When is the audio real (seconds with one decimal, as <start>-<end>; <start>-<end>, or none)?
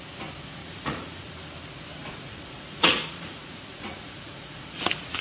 0.0-0.6; 1.3-2.0